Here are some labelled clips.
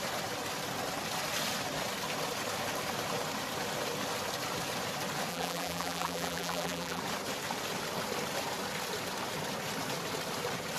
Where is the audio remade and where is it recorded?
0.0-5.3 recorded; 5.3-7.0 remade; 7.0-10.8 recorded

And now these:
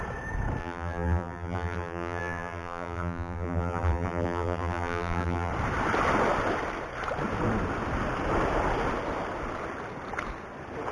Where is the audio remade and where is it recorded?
0.0-0.6 recorded; 0.6-5.5 remade; 5.5-10.9 recorded